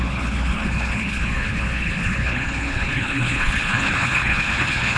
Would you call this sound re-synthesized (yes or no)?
yes